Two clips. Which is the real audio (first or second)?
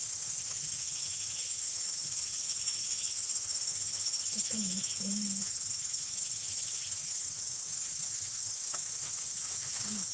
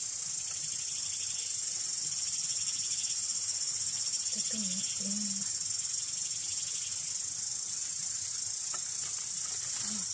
second